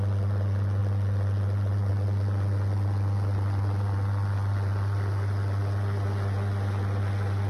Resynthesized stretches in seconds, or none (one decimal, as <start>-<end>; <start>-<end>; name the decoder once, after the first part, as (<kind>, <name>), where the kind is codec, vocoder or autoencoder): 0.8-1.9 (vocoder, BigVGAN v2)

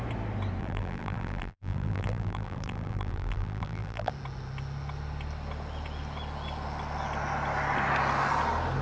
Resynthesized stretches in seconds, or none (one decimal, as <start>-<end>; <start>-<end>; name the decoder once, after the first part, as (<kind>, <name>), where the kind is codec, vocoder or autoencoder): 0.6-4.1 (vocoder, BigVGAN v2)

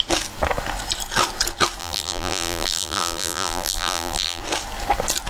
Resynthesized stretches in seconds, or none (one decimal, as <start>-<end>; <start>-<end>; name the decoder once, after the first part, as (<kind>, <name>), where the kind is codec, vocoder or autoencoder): 1.8-4.4 (vocoder, BigVGAN v2)